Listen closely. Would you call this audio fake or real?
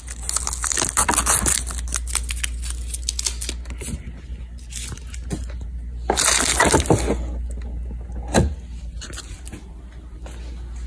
real